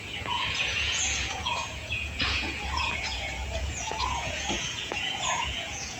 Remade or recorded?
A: remade